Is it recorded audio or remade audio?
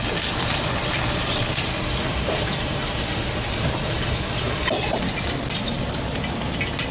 recorded